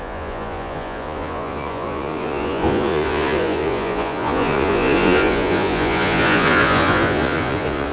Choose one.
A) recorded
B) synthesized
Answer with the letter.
B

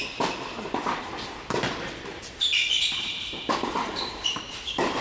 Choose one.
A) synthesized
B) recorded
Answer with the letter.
A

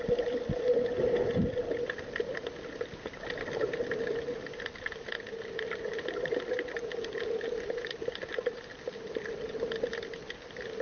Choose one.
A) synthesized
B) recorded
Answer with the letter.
B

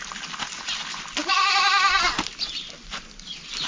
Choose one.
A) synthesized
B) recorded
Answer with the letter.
B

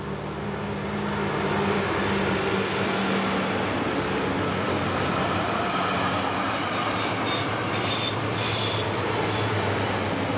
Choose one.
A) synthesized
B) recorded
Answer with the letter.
B